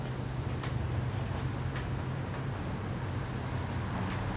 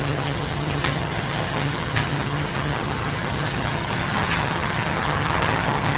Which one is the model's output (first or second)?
second